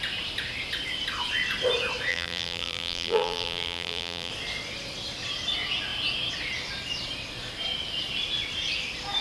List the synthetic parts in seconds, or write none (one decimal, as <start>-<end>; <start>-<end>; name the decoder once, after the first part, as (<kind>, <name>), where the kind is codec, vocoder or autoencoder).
2.1-4.3 (vocoder, BigVGAN v2)